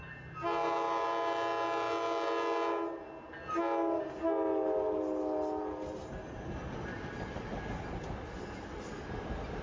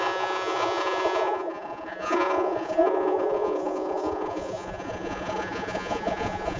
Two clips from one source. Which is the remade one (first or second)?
second